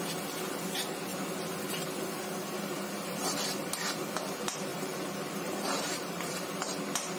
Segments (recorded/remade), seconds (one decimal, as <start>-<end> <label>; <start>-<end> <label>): 0.0-4.7 recorded; 4.7-6.6 remade; 6.6-7.2 recorded